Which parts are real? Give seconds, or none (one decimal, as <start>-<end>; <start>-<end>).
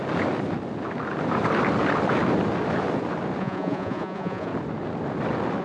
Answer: 0.0-3.4; 4.5-5.6